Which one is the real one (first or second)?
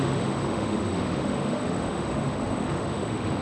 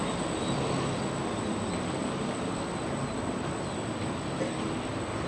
second